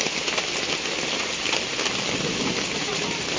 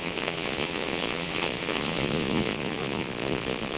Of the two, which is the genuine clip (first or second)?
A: first